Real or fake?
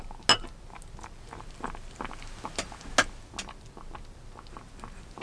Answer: real